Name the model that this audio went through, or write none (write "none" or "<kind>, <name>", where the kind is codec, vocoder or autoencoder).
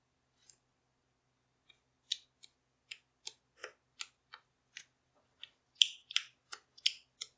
none